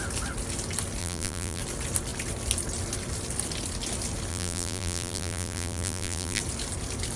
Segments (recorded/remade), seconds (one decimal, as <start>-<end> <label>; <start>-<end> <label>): 0.0-1.0 recorded; 1.0-1.6 remade; 1.6-4.3 recorded; 4.3-6.4 remade; 6.4-7.2 recorded